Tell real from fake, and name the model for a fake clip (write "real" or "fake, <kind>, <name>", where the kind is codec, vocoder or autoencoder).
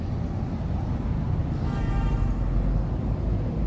real